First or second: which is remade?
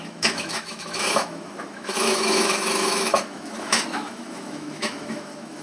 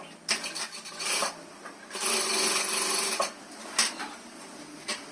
first